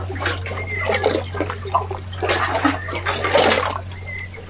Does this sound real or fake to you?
real